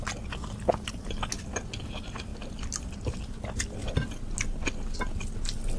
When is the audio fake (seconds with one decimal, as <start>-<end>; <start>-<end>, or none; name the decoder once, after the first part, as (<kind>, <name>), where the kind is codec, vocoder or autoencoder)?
none